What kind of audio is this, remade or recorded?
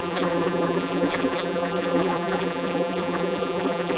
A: remade